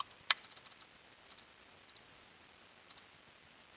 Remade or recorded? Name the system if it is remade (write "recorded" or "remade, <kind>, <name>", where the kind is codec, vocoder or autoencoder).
recorded